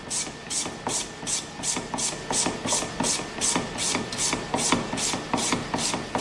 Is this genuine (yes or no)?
yes